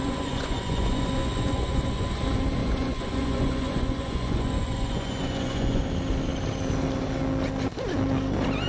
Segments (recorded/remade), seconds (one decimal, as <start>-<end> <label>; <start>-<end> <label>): 0.0-2.2 remade; 2.2-2.6 recorded; 2.6-5.8 remade; 5.8-8.7 recorded